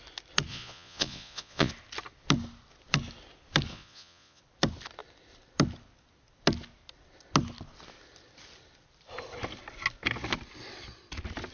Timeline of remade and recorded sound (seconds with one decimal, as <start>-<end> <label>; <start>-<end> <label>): 0.0-0.5 recorded; 0.5-1.7 remade; 1.7-3.7 recorded; 3.7-4.4 remade; 4.4-11.5 recorded